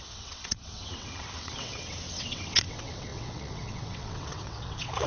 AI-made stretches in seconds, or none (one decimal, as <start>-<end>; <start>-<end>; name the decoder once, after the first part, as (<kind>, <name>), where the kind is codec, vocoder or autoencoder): 0.0-5.1 (vocoder, WaveNeXt)